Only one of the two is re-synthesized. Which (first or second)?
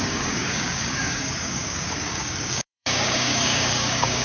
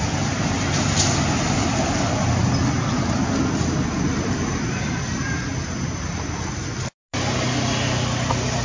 first